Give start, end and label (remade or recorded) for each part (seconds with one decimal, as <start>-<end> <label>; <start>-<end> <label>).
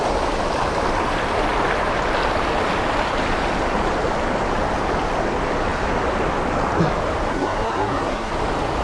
0.0-7.3 recorded; 7.3-8.3 remade; 8.3-8.8 recorded